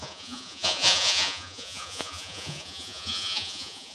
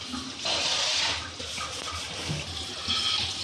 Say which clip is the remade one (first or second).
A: first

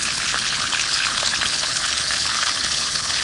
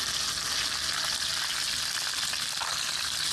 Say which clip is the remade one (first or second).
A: first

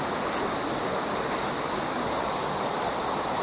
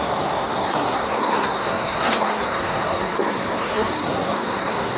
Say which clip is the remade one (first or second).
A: second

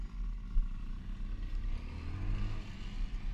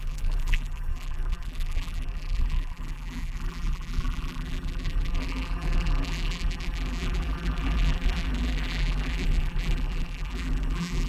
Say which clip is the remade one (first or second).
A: second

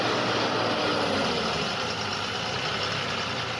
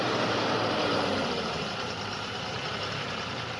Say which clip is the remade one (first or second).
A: second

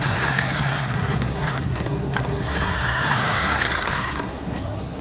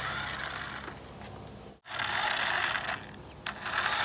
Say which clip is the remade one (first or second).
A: first